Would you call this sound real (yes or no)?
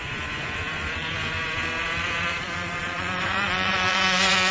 no